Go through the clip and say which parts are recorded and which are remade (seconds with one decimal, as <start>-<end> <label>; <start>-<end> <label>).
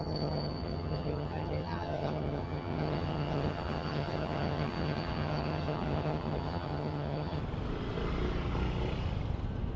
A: 0.0-7.4 remade; 7.4-9.8 recorded